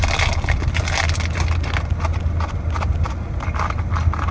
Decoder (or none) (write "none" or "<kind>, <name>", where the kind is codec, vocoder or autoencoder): none